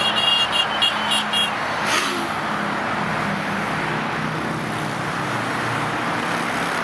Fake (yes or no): no